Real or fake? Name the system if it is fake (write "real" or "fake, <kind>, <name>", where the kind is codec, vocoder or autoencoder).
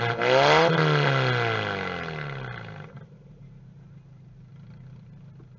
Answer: real